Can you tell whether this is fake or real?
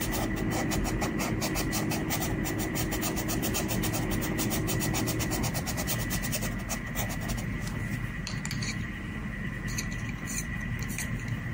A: real